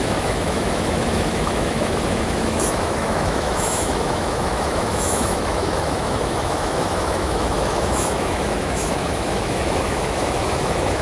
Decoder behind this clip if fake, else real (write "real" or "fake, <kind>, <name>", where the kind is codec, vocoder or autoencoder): fake, autoencoder, DAC-VAE